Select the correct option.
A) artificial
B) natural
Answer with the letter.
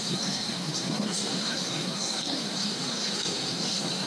A